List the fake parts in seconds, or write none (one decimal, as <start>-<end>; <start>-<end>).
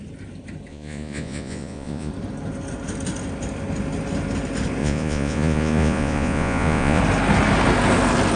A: 0.7-2.1; 4.8-7.0